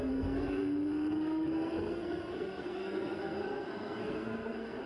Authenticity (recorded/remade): remade